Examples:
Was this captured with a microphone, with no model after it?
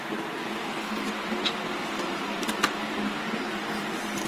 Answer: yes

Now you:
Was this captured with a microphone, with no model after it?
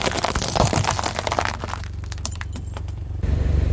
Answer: no